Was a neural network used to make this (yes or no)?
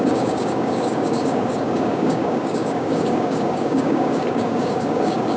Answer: yes